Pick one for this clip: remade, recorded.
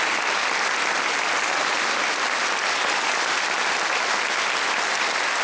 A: recorded